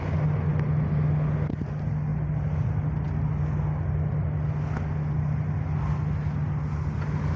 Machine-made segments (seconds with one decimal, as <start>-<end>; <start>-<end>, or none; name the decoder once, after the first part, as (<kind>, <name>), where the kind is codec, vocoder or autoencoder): none